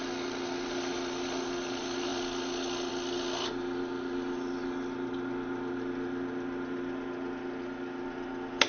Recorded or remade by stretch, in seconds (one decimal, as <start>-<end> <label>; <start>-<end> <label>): 0.0-8.7 recorded